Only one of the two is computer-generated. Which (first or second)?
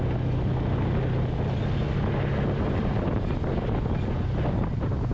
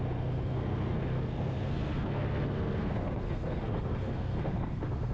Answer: second